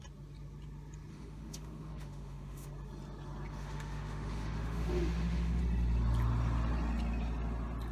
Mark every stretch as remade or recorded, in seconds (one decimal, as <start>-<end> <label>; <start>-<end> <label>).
0.0-1.1 recorded; 1.1-2.7 remade; 2.7-3.5 recorded; 3.5-5.6 remade; 5.6-7.9 recorded